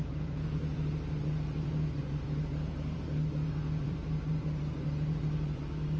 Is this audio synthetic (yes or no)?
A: yes